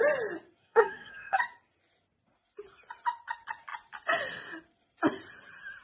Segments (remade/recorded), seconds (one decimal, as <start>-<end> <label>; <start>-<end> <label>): 0.0-0.6 recorded; 0.6-1.4 remade; 1.4-5.8 recorded